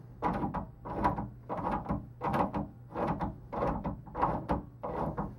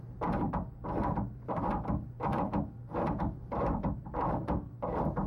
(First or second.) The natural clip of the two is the first